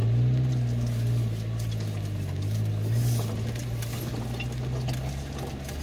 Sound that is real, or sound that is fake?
real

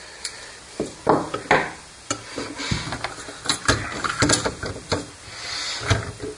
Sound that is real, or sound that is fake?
real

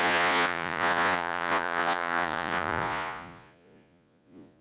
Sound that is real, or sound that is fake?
fake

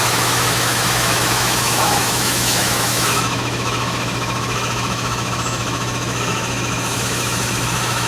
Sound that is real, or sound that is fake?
fake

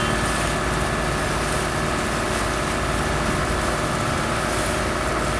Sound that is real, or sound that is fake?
real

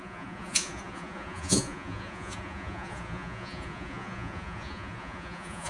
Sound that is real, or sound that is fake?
fake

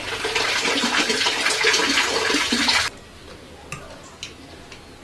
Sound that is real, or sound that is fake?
real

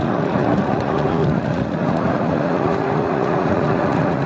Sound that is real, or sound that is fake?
fake